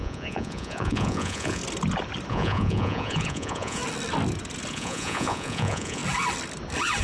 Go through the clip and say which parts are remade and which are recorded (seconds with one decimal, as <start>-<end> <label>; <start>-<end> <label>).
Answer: 0.0-1.6 remade; 1.6-2.3 recorded; 2.3-3.8 remade; 3.8-4.7 recorded; 4.7-6.0 remade; 6.0-7.0 recorded